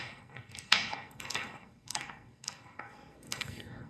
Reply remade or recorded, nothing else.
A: remade